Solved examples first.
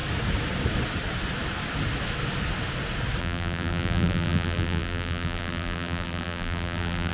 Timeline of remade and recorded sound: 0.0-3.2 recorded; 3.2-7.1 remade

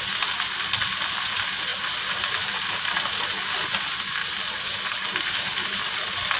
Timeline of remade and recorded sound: 0.0-1.7 recorded; 1.7-2.8 remade; 2.8-4.2 recorded; 4.2-5.2 remade; 5.2-6.4 recorded

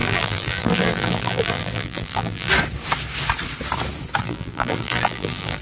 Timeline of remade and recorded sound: 0.0-2.5 remade; 2.5-4.2 recorded; 4.2-5.6 remade

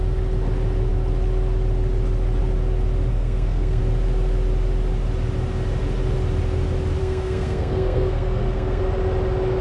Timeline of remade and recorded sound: 0.0-3.1 recorded; 3.1-3.8 remade; 3.8-7.0 recorded; 7.0-8.8 remade; 8.8-9.6 recorded